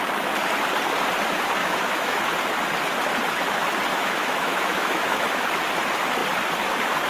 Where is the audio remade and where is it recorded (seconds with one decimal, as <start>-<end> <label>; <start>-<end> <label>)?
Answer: 0.0-1.6 recorded; 1.6-2.3 remade; 2.3-3.9 recorded; 3.9-5.4 remade; 5.4-7.1 recorded